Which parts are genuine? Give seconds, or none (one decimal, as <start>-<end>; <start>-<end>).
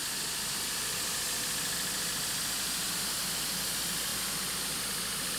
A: 0.0-5.4